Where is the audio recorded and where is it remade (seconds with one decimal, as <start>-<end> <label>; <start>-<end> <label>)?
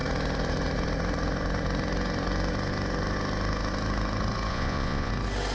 0.0-4.5 recorded; 4.5-5.1 remade; 5.1-5.5 recorded